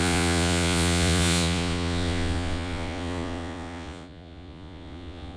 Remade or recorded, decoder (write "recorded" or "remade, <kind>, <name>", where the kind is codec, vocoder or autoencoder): remade, vocoder, Vocos